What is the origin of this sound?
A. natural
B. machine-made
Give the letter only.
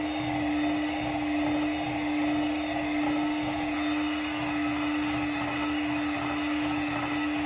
A